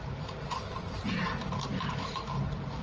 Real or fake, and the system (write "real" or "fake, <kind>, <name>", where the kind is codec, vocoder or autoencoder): real